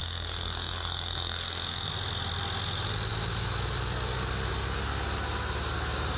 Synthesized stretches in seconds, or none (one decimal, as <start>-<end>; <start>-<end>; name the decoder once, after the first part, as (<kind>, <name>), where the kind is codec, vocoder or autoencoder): 0.0-1.9 (codec, SNAC)